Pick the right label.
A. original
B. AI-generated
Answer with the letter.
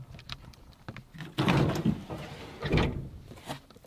A